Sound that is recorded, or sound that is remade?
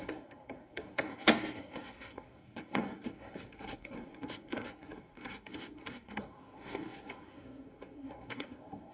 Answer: remade